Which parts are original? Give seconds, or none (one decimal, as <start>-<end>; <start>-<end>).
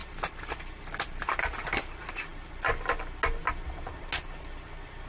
0.0-5.1